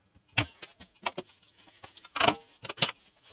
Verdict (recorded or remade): recorded